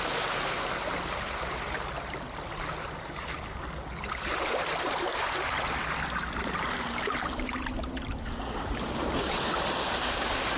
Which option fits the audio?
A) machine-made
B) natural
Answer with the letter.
B